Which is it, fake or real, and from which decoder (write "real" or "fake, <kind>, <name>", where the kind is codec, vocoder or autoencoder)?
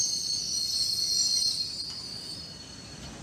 real